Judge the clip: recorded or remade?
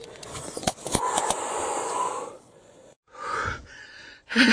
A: remade